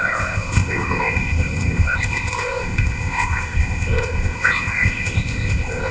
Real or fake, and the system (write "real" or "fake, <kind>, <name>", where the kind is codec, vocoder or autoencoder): fake, codec, ZipCodec